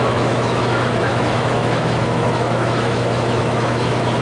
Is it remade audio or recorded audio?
remade